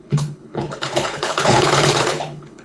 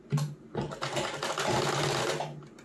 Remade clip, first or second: first